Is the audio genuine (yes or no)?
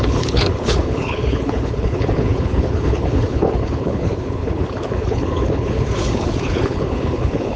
no